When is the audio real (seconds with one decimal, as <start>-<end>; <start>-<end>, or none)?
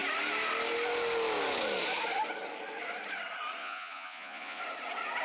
0.0-3.6; 4.6-5.2